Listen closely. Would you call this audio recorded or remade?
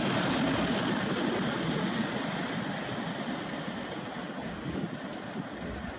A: recorded